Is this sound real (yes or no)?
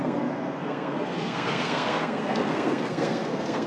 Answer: no